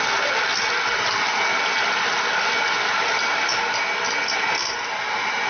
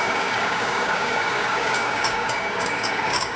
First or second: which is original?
first